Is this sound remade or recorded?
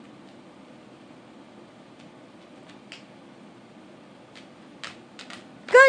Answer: recorded